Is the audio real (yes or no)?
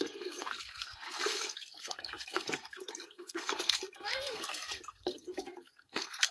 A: no